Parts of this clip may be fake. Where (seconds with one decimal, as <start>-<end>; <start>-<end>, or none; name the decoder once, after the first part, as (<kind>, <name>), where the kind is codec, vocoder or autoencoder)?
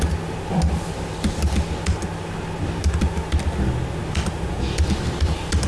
none